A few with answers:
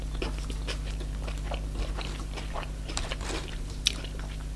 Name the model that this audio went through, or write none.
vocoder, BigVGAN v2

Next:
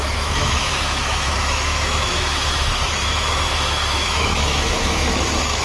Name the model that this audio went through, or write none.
autoencoder, DAC-VAE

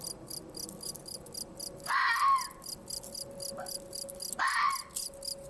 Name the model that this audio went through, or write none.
vocoder, BigVGAN v2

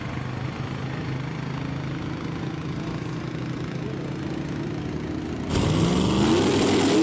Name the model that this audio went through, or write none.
none